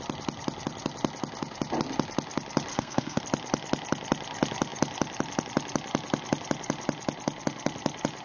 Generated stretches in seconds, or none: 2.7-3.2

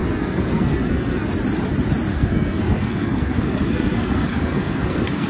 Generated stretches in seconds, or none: 0.0-1.3; 2.1-5.3

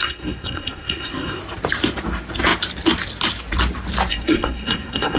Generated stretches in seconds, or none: 0.0-1.4; 4.1-5.2

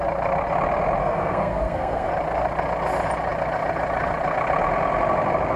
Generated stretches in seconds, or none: 1.0-2.1